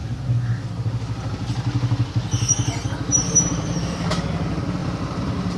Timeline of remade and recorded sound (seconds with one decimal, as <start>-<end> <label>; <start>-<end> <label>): 0.0-3.5 recorded; 3.5-4.3 remade; 4.3-4.8 recorded; 4.8-5.6 remade

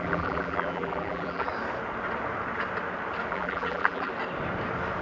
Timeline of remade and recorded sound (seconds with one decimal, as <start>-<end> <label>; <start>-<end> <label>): 0.0-1.5 remade; 1.5-3.3 recorded; 3.3-4.1 remade; 4.1-5.0 recorded

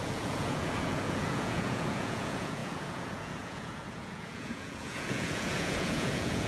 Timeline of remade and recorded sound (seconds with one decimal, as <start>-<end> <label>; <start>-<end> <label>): 0.0-6.5 remade

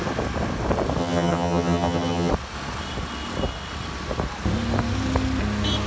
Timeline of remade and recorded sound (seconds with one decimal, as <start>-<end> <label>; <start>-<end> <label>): 0.0-1.0 recorded; 1.0-2.3 remade; 2.3-5.9 recorded

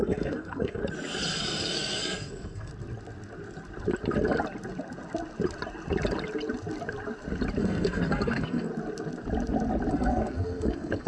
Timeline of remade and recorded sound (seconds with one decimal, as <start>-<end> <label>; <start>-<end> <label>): 0.0-0.8 remade; 0.8-1.3 recorded; 1.3-2.7 remade; 2.7-7.6 recorded; 7.6-8.7 remade; 8.7-9.9 recorded; 9.9-11.1 remade

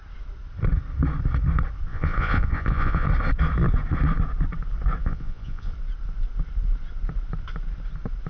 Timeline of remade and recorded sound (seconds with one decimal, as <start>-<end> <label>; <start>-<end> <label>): 0.0-1.9 recorded; 1.9-3.1 remade; 3.1-5.0 recorded; 5.0-5.7 remade; 5.7-8.3 recorded